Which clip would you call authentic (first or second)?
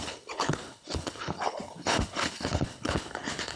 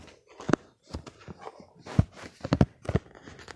second